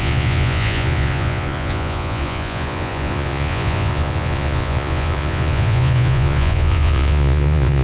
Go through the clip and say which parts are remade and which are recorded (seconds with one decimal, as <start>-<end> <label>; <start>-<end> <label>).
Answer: 0.0-7.8 remade